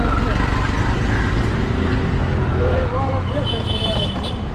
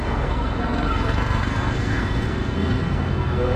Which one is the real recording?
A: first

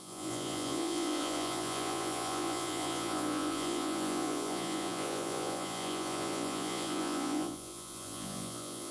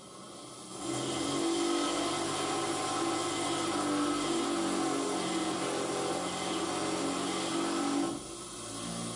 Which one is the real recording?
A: second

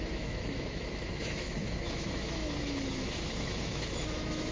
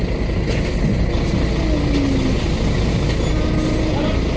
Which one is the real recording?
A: second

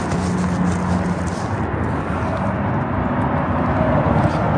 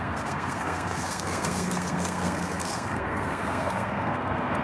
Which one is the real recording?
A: first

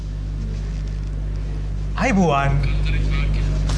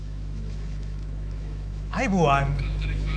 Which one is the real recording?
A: first